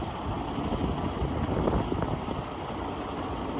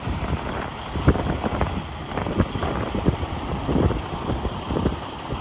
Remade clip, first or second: second